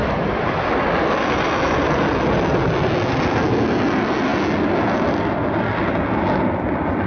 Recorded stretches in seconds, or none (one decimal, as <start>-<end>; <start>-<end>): 0.0-7.1